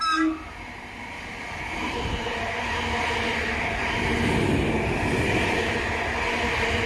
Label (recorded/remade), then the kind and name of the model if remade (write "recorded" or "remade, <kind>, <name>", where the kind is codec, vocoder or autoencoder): recorded